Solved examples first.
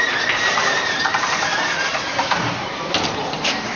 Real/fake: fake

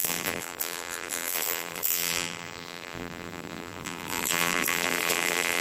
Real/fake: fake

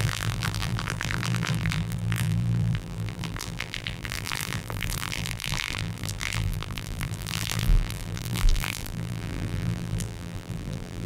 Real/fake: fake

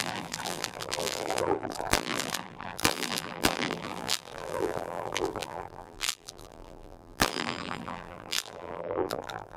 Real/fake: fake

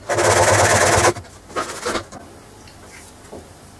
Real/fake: real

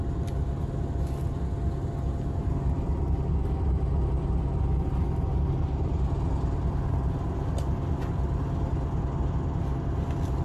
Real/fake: real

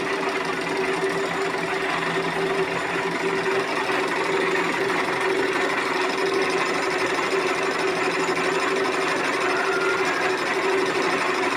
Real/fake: real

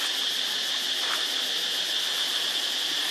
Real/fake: real